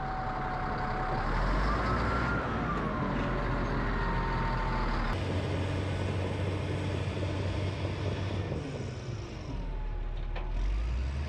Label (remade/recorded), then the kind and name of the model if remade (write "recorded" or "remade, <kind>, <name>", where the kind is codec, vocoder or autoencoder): recorded